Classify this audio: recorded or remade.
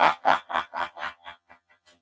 remade